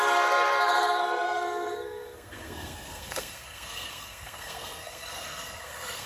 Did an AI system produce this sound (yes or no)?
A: yes